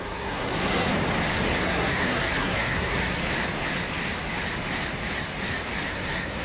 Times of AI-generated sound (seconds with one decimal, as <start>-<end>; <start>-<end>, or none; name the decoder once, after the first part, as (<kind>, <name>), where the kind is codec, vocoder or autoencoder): 0.0-0.9 (codec, SNAC); 1.6-3.2; 5.9-6.4